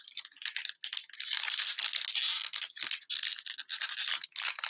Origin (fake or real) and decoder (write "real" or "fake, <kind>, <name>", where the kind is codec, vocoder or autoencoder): real